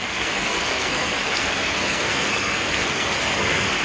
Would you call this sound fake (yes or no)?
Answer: yes